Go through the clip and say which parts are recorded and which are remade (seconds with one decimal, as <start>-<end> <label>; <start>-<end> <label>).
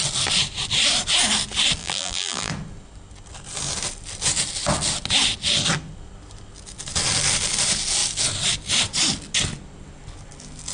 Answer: 0.0-1.8 recorded; 1.8-2.5 remade; 2.5-10.7 recorded